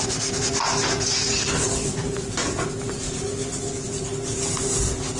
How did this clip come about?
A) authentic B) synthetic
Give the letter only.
A